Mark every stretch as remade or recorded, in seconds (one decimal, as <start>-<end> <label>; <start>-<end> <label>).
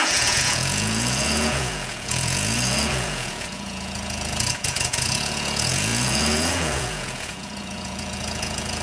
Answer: 0.0-8.8 remade